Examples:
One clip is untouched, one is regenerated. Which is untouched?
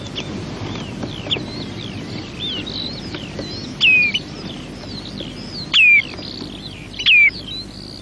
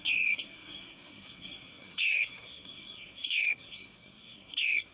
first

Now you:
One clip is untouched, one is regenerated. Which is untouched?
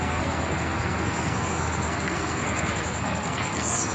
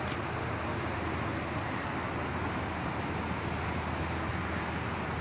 second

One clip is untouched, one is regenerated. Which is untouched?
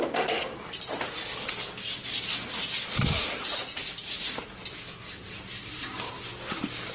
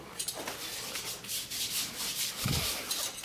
first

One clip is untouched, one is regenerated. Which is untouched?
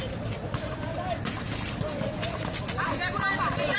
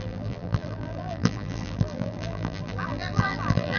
first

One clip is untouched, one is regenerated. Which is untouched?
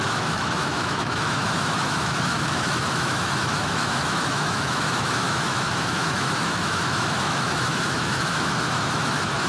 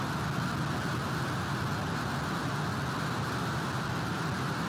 second